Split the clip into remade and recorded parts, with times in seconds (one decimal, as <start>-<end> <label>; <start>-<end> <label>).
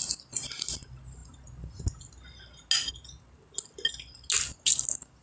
0.0-5.2 recorded